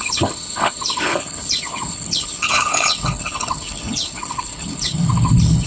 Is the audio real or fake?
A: fake